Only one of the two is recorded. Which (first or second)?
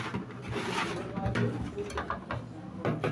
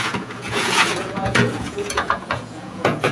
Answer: first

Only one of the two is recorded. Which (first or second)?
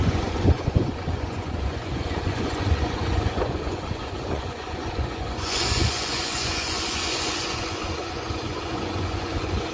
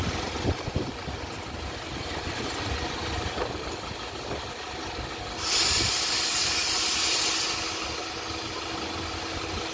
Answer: second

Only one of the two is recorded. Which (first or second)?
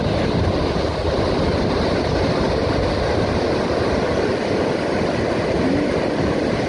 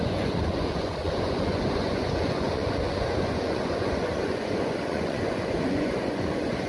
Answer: first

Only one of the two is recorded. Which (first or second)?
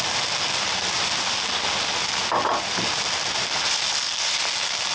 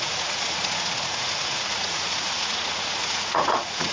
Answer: first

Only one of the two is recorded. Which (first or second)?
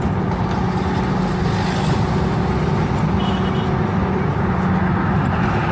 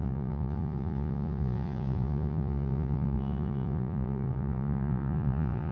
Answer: first